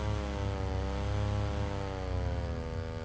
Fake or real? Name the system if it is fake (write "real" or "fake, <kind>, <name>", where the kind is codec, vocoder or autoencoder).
real